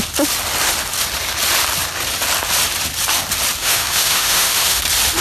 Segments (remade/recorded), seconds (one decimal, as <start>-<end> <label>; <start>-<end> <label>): 0.0-3.6 recorded; 3.6-4.8 remade; 4.8-5.2 recorded